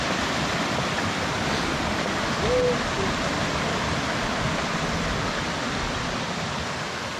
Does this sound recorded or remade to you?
recorded